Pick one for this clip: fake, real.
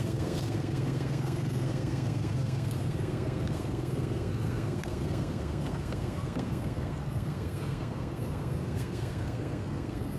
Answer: fake